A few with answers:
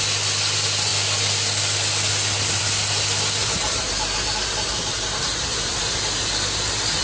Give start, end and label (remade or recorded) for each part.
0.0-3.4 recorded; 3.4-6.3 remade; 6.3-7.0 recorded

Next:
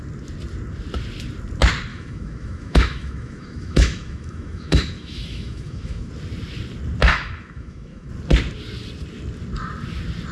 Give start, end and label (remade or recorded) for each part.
0.0-1.9 recorded; 1.9-6.1 remade; 6.1-7.1 recorded; 7.1-8.1 remade; 8.1-10.3 recorded

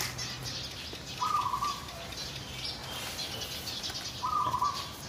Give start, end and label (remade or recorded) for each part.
0.0-5.1 recorded

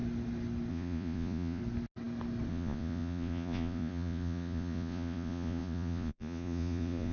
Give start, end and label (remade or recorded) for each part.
0.0-0.7 recorded; 0.7-1.6 remade; 1.6-2.5 recorded; 2.5-7.1 remade

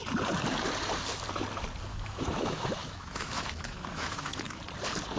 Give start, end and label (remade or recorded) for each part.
0.0-1.9 recorded; 1.9-4.6 remade; 4.6-5.2 recorded